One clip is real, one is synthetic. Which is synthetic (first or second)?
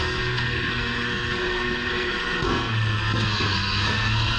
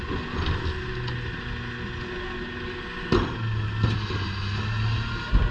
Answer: first